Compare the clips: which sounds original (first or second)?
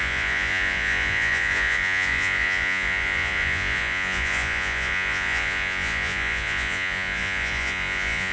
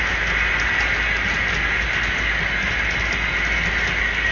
second